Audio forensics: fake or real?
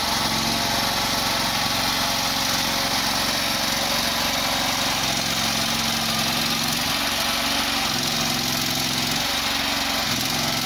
real